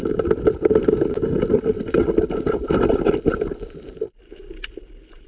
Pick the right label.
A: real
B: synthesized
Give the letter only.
A